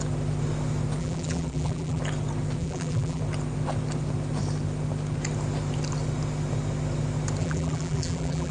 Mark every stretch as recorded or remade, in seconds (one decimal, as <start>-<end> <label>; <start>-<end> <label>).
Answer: 0.0-1.0 recorded; 1.0-2.0 remade; 2.0-2.6 recorded; 2.6-3.2 remade; 3.2-7.4 recorded; 7.4-8.5 remade